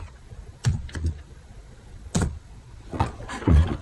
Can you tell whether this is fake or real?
fake